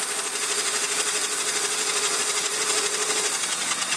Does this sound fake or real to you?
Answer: fake